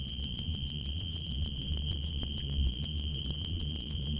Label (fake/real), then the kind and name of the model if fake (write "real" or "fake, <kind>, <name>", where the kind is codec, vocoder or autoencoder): fake, vocoder, Vocos